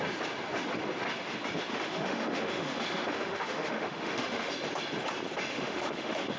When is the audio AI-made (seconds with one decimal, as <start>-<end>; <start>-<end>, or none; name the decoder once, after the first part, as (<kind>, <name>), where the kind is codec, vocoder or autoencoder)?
1.7-4.5 (autoencoder, DAC-VAE); 5.5-6.4

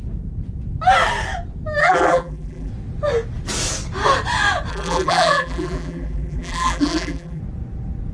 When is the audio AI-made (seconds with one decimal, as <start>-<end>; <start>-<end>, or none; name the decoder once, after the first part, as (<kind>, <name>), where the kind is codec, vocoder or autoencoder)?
1.8-2.7 (vocoder, BigVGAN v2); 4.7-7.4